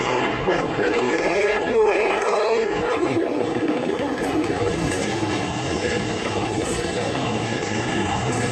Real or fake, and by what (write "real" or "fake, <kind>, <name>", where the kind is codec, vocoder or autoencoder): fake, codec, SNAC